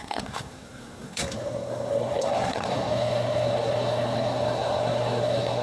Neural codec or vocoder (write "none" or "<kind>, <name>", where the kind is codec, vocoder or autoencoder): codec, SNAC